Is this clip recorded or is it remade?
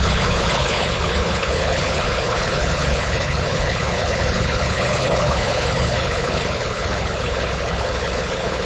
remade